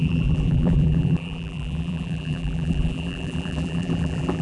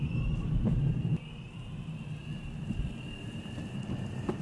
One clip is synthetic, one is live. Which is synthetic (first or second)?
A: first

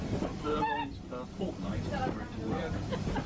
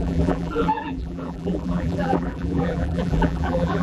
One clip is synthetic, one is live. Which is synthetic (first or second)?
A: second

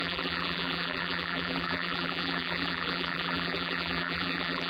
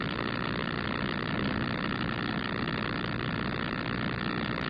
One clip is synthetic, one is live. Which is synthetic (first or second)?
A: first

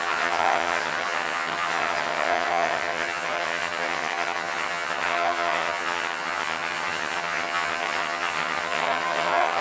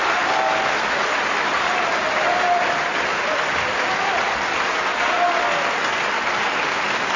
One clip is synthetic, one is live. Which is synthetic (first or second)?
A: first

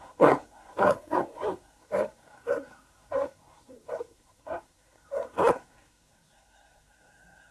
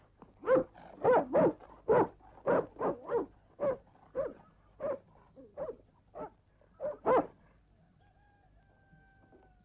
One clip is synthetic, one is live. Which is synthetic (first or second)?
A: first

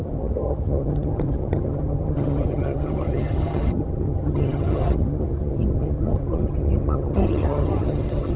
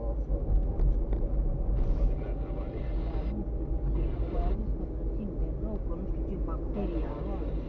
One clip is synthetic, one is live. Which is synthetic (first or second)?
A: first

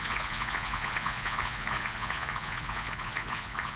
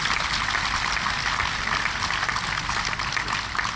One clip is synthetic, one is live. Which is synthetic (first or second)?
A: first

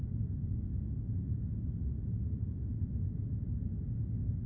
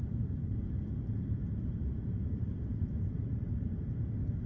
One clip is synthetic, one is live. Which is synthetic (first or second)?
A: second